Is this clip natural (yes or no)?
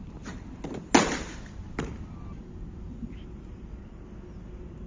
yes